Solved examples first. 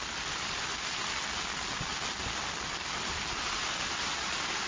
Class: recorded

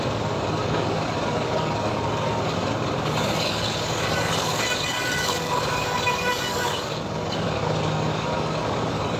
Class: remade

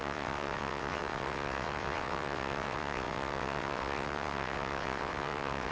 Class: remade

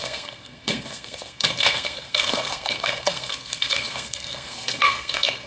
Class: remade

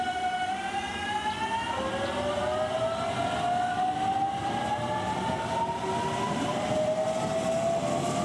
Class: recorded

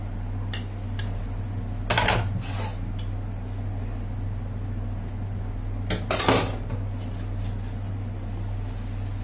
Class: recorded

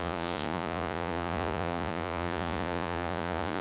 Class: remade